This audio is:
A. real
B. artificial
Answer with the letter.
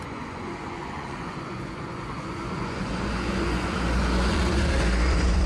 B